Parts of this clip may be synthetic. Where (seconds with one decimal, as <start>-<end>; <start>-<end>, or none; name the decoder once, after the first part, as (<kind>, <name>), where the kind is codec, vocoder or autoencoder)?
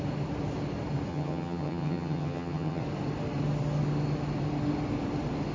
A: 1.1-2.8 (vocoder, HiFi-GAN)